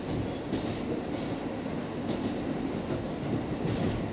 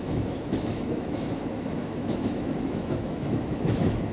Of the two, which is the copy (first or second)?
second